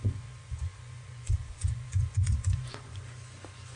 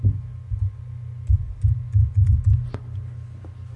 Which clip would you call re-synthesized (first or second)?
first